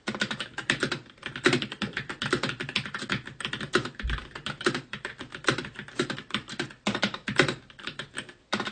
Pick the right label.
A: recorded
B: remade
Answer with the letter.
B